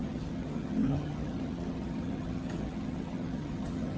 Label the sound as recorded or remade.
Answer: remade